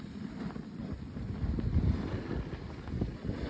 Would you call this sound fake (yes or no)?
no